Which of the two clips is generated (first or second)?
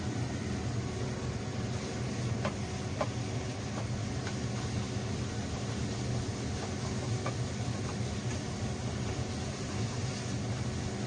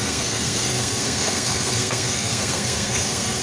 second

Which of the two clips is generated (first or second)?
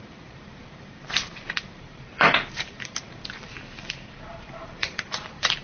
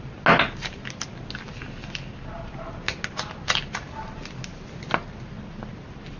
first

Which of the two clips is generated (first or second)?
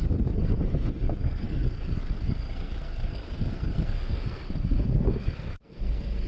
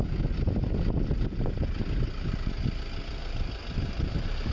first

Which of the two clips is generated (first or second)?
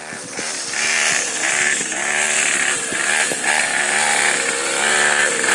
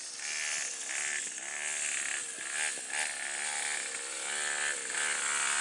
first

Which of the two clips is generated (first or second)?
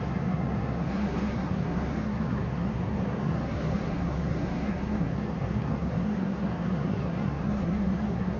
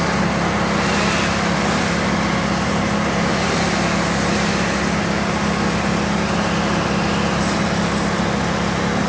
first